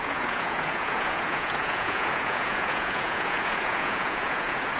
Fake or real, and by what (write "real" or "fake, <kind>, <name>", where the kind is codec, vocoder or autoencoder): fake, vocoder, Vocos